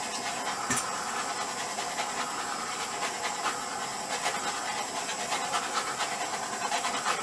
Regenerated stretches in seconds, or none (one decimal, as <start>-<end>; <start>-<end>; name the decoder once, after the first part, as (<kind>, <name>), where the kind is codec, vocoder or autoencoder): 6.3-7.2 (vocoder, BigVGAN v2)